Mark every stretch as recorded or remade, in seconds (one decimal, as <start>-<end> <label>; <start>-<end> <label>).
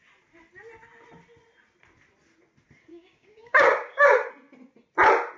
0.0-2.9 recorded; 2.9-4.3 remade; 4.3-5.4 recorded